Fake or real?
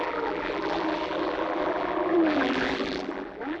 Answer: fake